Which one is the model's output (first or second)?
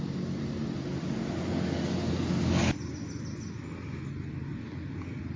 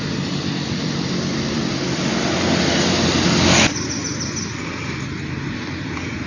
second